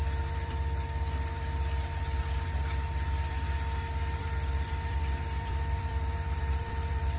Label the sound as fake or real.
fake